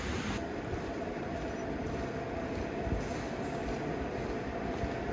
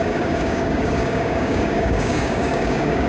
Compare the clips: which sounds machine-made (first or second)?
second